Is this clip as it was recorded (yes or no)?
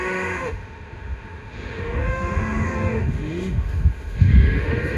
no